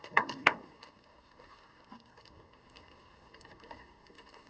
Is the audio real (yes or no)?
no